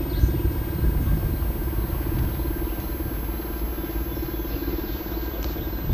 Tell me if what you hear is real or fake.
real